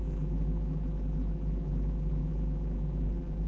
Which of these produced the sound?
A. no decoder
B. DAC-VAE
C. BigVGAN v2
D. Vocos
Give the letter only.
C